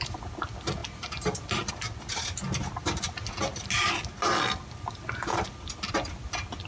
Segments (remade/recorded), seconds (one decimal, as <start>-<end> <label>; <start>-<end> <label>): 0.0-6.7 recorded